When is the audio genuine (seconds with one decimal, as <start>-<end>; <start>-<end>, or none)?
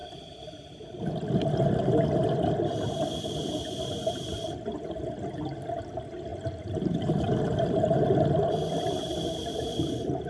0.0-10.3